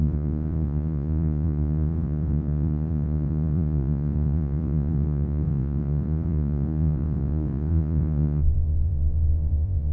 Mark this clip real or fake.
fake